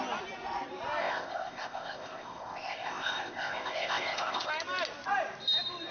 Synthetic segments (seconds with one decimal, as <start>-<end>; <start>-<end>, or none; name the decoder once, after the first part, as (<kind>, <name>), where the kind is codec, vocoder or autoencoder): 1.0-4.5 (codec, ZipCodec)